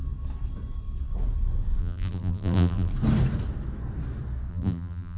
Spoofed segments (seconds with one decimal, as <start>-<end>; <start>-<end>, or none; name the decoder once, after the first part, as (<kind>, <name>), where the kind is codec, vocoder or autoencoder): 1.8-2.9 (vocoder, BigVGAN v2); 4.5-5.2